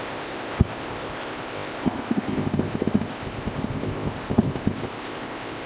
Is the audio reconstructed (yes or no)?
yes